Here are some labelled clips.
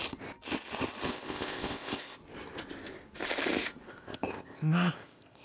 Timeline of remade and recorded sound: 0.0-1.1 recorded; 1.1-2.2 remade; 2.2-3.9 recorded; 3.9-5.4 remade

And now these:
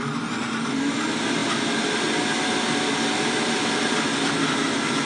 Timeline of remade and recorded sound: 0.0-5.1 recorded

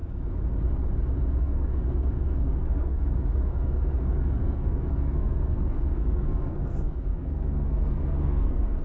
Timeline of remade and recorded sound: 0.0-1.4 recorded; 1.4-8.8 remade

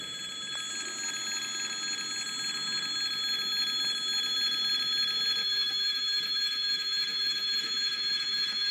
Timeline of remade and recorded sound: 0.0-5.4 recorded; 5.4-8.7 remade